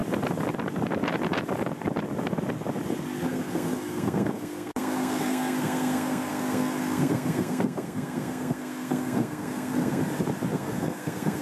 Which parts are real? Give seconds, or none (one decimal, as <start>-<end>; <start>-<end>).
0.0-3.2; 10.0-10.5